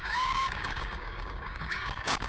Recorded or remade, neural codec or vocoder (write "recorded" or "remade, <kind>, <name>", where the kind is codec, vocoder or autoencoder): remade, codec, DAC